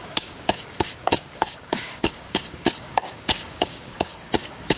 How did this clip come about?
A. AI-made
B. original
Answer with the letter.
A